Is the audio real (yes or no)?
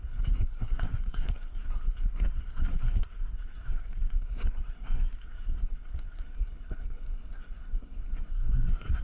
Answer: no